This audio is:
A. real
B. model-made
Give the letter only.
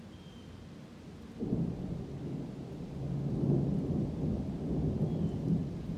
A